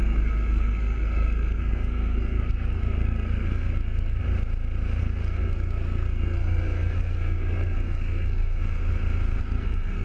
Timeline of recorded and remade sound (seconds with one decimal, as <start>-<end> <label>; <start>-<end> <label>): 0.0-4.2 remade; 4.2-5.0 recorded; 5.0-8.8 remade; 8.8-9.4 recorded; 9.4-10.0 remade